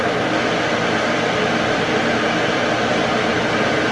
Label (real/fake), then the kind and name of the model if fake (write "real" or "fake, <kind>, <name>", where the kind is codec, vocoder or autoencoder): real